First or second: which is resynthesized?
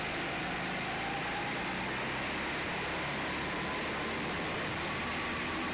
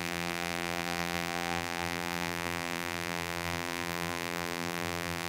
second